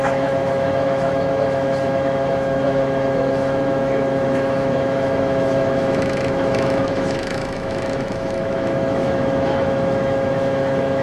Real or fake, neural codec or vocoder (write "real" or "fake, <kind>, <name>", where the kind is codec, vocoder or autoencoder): fake, autoencoder, DAC-VAE